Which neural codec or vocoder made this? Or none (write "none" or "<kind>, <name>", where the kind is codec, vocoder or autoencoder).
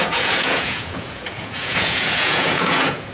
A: vocoder, Vocos